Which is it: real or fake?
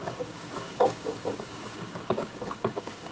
fake